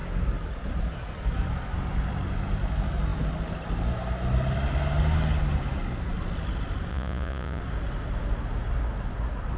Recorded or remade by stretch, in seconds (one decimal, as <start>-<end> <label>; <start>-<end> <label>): 0.0-6.9 recorded; 6.9-7.6 remade; 7.6-9.6 recorded